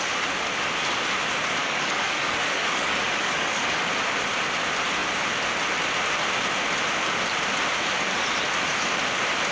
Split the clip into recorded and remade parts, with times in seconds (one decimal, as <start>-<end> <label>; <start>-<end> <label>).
0.0-1.6 recorded; 1.6-3.9 remade; 3.9-9.5 recorded